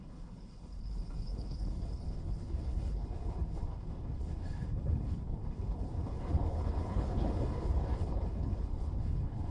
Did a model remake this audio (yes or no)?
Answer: yes